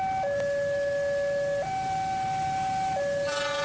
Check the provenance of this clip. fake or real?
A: real